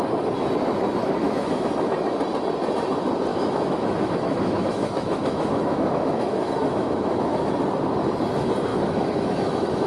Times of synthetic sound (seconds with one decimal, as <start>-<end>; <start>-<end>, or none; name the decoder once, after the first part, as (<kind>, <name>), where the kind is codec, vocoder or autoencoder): 1.0-1.7 (autoencoder, DAC-VAE); 3.3-7.5; 8.7-9.9